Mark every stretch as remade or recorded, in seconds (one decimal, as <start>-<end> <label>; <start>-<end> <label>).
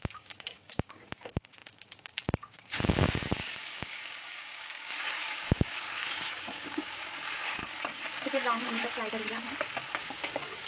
0.0-7.6 remade; 7.6-8.1 recorded; 8.1-8.8 remade; 8.8-9.9 recorded; 9.9-10.7 remade